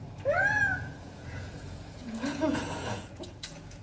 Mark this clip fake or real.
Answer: fake